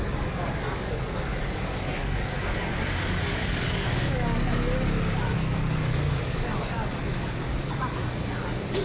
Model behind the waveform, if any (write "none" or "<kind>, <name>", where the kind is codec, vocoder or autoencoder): codec, DAC